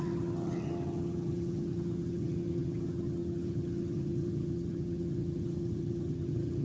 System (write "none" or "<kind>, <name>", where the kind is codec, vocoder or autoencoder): vocoder, HiFi-GAN